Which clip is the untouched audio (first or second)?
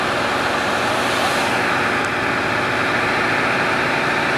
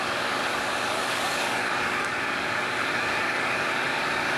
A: first